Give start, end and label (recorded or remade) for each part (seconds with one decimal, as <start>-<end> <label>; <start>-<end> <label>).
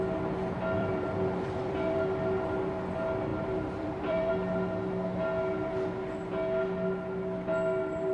0.0-0.8 recorded; 0.8-2.0 remade; 2.0-3.3 recorded; 3.3-4.3 remade; 4.3-8.1 recorded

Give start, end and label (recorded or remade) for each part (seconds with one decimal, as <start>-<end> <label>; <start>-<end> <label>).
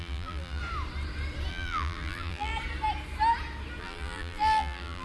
0.0-0.6 remade; 0.6-1.5 recorded; 1.5-2.5 remade; 2.5-3.8 recorded; 3.8-5.0 remade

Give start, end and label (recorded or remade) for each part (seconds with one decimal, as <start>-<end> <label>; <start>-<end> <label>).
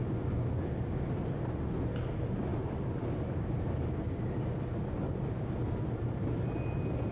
0.0-7.1 recorded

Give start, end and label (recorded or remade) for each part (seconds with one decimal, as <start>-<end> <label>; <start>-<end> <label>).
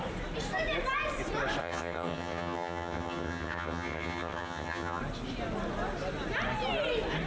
0.0-1.6 recorded; 1.6-5.0 remade; 5.0-7.3 recorded